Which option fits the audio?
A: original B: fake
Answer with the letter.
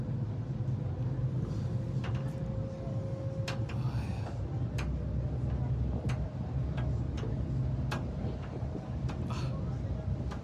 A